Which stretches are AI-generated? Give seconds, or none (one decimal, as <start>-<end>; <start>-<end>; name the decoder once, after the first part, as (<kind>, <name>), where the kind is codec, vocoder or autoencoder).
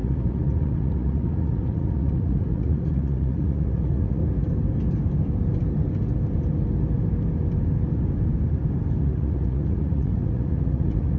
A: 0.0-4.2 (vocoder, Vocos); 9.0-11.2